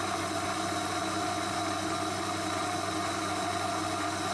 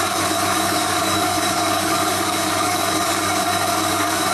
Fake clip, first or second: second